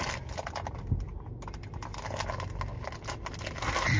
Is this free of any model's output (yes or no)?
yes